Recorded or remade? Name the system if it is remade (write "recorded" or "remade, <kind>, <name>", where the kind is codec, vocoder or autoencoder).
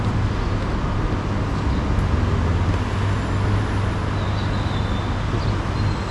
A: recorded